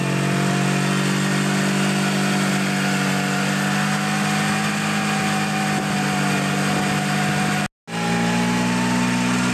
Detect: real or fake real